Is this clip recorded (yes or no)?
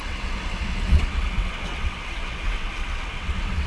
no